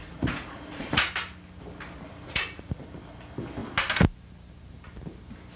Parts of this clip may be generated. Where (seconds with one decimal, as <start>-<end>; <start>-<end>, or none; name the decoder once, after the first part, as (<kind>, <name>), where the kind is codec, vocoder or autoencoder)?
0.0-1.1 (vocoder, Vocos); 2.1-2.8